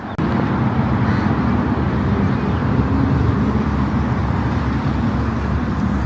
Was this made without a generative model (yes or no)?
yes